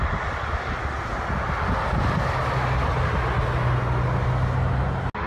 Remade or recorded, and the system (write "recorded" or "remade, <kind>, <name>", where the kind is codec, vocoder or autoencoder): recorded